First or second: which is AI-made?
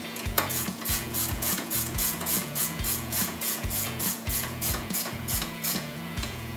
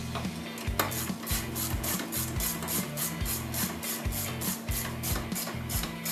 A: first